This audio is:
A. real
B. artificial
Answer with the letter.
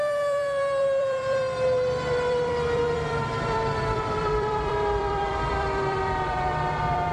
B